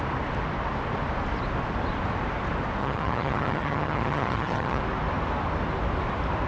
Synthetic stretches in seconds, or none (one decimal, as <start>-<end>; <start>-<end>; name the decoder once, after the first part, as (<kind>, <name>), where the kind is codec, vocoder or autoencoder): 2.8-4.8 (vocoder, HiFi-GAN)